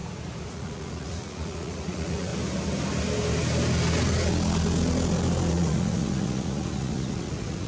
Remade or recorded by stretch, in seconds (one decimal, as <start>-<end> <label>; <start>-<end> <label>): 0.0-0.5 recorded; 0.5-2.3 remade; 2.3-5.5 recorded; 5.5-7.7 remade